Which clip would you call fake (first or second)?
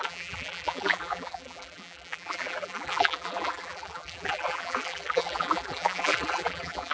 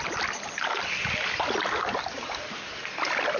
first